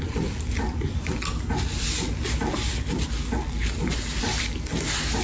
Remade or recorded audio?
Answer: recorded